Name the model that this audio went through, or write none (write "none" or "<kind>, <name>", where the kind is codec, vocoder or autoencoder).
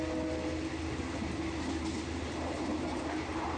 none